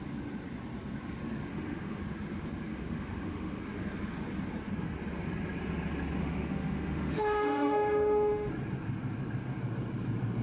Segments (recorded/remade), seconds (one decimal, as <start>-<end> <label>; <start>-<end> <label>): 0.0-1.5 recorded; 1.5-2.0 remade; 2.0-2.7 recorded; 2.7-3.6 remade; 3.6-6.2 recorded; 6.2-8.5 remade; 8.5-10.4 recorded